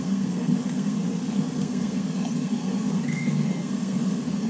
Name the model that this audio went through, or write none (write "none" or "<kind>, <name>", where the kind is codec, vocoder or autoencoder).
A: codec, SNAC